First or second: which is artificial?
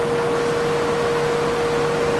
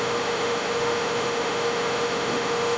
second